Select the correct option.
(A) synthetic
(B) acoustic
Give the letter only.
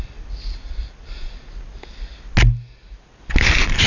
B